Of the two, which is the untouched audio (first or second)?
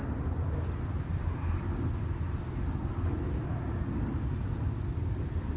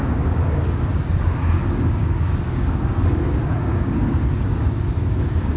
first